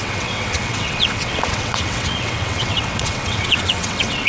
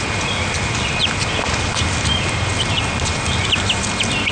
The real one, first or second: second